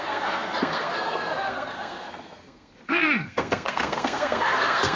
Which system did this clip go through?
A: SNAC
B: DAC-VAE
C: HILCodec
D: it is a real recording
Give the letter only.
A